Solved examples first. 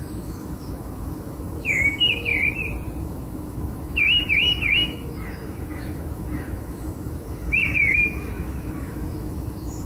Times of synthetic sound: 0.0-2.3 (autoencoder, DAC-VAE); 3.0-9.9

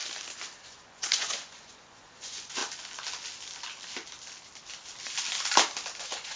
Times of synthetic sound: 0.6-2.6 (vocoder, Vocos); 6.0-6.4